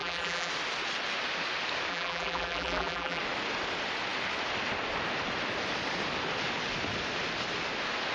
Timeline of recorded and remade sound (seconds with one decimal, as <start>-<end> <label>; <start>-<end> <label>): 0.0-0.5 remade; 0.5-1.9 recorded; 1.9-3.2 remade; 3.2-8.1 recorded